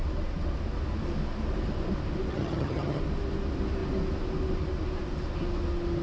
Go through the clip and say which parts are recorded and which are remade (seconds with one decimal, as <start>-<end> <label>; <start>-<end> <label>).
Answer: 0.0-2.3 recorded; 2.3-3.0 remade; 3.0-6.0 recorded